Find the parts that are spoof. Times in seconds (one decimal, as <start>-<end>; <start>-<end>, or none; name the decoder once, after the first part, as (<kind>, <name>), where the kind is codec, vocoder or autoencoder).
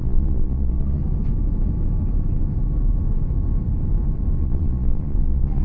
0.0-1.0 (vocoder, Vocos); 4.4-5.6